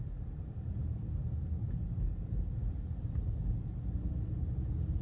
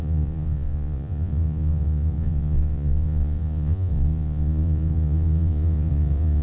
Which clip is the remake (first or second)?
second